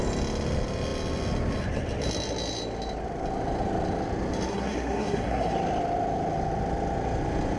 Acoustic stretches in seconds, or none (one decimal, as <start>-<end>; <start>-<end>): 0.0-4.5; 5.5-7.6